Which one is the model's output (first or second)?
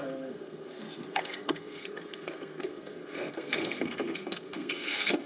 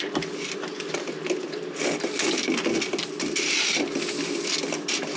first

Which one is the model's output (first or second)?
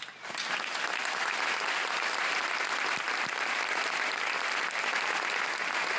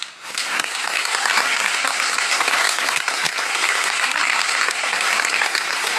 second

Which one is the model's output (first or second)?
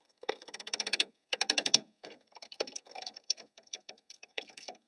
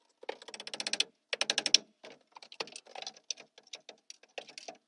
first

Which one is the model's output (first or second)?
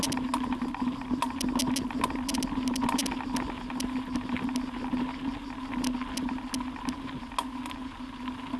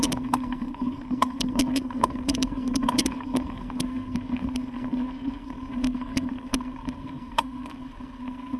second